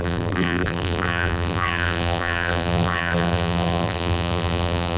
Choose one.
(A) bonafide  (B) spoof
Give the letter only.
B